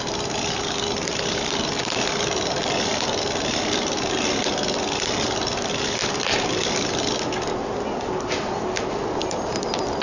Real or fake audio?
real